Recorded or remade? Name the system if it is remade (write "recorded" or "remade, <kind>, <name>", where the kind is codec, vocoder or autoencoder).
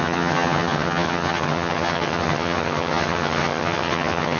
remade, vocoder, HiFi-GAN